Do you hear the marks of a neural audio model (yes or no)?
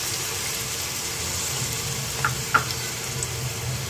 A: no